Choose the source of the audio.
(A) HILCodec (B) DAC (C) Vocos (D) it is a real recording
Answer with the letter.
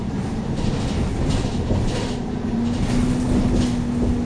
D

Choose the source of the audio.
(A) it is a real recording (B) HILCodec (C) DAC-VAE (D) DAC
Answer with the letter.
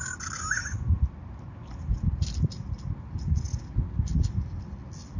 A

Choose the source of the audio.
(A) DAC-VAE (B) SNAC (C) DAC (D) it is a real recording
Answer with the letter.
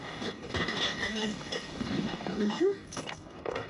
C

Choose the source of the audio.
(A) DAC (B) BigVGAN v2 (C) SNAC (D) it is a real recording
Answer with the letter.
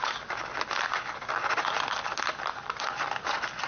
D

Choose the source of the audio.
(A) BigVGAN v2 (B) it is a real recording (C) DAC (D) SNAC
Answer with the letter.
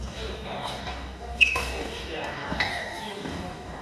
C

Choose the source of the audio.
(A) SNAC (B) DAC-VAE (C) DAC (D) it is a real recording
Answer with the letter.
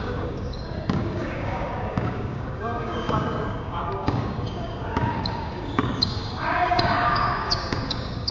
C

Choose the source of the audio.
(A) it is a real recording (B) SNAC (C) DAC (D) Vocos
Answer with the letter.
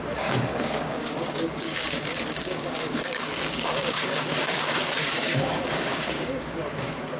C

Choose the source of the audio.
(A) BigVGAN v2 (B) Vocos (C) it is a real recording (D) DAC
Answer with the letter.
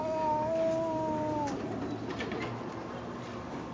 C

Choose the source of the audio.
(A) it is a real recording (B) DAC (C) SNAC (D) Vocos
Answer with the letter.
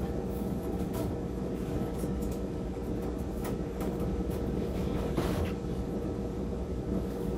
B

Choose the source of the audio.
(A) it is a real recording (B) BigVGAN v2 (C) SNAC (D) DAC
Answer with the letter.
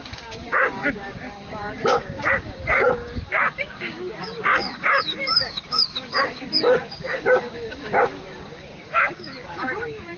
D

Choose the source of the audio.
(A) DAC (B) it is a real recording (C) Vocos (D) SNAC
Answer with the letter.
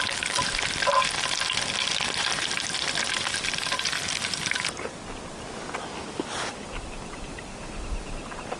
B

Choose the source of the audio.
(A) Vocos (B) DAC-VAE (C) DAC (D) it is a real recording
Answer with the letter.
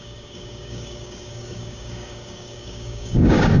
C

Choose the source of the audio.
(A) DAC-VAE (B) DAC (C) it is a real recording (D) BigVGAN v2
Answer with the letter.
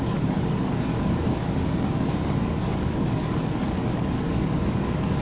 B